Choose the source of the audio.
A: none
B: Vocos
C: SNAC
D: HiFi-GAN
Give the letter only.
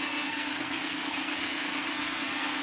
C